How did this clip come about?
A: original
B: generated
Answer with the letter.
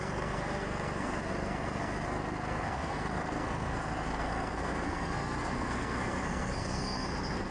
B